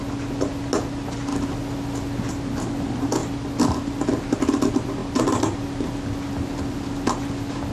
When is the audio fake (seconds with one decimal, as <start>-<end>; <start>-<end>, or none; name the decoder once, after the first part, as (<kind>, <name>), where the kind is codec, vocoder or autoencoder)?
none